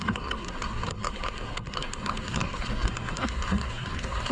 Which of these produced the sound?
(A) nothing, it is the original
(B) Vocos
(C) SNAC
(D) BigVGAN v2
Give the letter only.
C